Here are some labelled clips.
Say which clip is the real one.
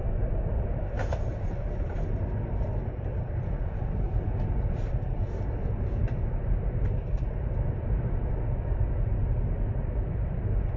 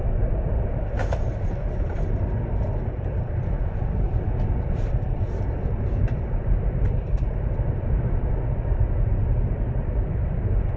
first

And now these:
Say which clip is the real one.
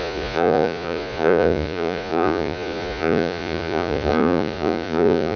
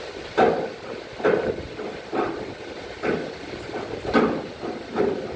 second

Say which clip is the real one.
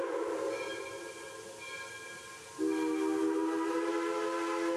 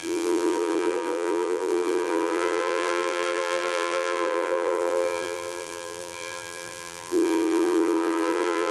first